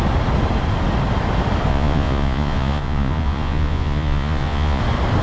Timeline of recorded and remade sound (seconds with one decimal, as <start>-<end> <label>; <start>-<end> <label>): 0.0-1.7 recorded; 1.7-4.8 remade; 4.8-5.2 recorded